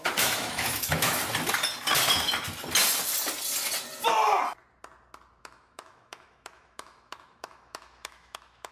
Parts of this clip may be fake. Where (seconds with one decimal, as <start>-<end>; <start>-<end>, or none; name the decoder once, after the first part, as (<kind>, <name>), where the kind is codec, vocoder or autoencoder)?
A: 0.0-1.2 (autoencoder, DAC-VAE); 5.4-8.7